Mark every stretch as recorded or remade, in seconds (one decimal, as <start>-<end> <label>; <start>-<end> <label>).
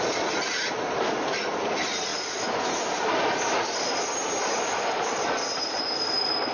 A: 0.0-6.5 recorded